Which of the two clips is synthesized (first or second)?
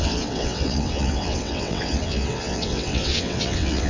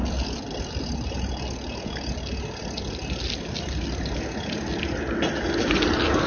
first